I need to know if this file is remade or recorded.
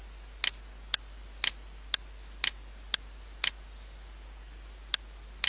recorded